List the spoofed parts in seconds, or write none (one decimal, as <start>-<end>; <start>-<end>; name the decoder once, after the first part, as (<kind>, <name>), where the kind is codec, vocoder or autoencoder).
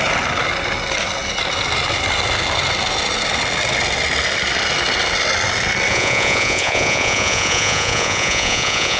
5.9-9.0 (vocoder, Vocos)